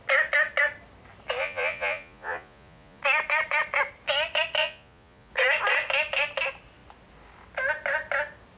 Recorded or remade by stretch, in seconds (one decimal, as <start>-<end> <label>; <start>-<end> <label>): 0.0-1.4 recorded; 1.4-3.0 remade; 3.0-4.6 recorded; 4.6-5.3 remade; 5.3-8.6 recorded